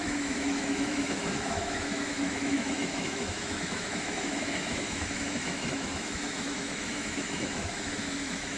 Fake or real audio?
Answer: fake